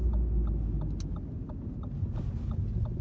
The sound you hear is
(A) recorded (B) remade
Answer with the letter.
A